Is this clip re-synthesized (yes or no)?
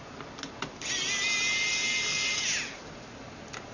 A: no